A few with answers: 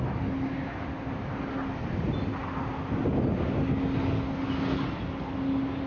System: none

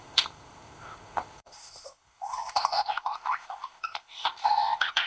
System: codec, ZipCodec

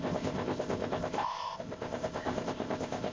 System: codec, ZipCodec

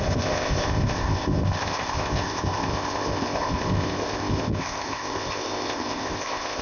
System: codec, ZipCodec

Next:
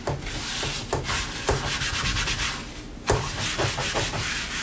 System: none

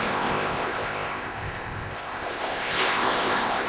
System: codec, ZipCodec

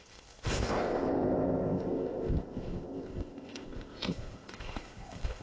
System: codec, ZipCodec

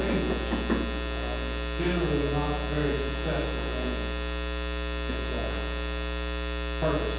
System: none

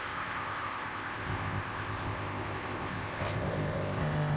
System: codec, ZipCodec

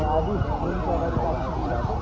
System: none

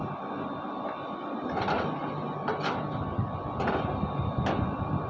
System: none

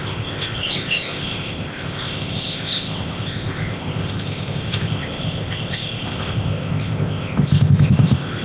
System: codec, ZipCodec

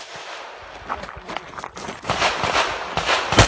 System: none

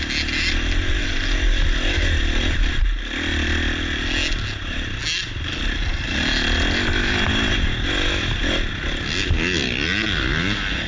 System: none